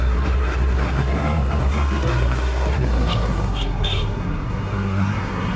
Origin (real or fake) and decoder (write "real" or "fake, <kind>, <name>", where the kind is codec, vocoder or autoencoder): fake, codec, SNAC